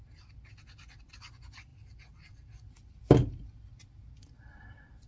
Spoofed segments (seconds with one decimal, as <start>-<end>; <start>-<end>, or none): none